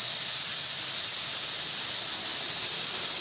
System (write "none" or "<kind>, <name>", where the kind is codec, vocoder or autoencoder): none